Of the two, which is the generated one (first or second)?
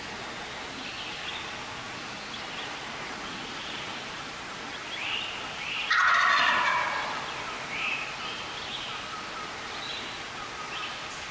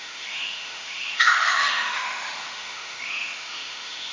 second